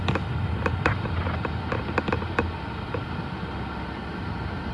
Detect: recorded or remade recorded